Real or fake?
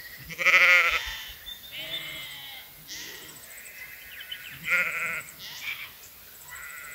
real